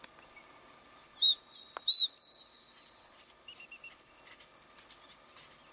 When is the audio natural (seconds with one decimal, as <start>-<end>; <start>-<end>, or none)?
0.0-5.7